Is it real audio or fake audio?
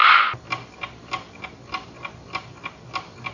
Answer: real